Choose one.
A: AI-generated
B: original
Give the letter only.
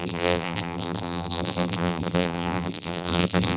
A